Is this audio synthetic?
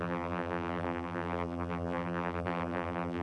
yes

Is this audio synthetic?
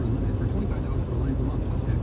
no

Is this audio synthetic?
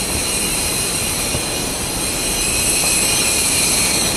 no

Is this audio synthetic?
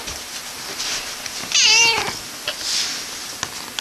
no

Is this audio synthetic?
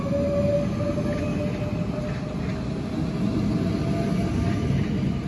no